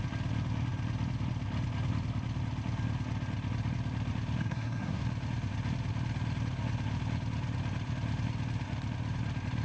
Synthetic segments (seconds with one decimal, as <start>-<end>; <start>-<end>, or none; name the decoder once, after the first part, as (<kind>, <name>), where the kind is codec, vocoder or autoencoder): 4.4-5.0 (codec, SNAC)